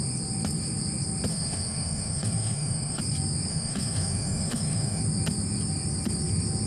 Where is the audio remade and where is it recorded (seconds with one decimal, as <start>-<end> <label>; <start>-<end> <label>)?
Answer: 0.0-1.3 recorded; 1.3-3.0 remade; 3.0-3.5 recorded; 3.5-5.0 remade; 5.0-6.7 recorded